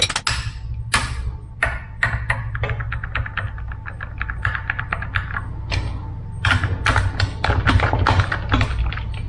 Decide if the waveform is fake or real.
real